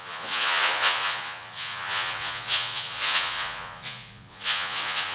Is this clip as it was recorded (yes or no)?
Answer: no